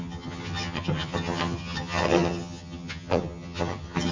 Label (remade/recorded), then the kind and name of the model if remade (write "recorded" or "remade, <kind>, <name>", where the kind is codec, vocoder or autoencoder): remade, vocoder, HiFi-GAN